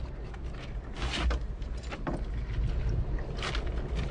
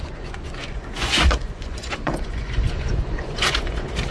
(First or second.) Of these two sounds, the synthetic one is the second